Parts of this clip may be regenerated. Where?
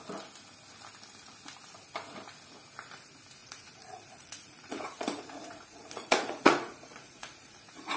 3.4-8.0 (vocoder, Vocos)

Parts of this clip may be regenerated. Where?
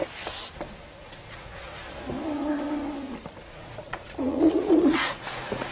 1.0-1.6 (vocoder, Vocos); 3.4-5.7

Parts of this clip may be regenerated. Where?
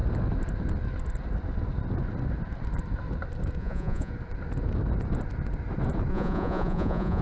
3.6-4.1 (vocoder, Vocos); 6.1-7.2